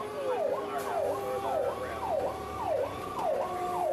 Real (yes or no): yes